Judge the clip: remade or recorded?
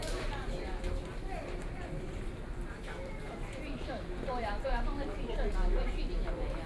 remade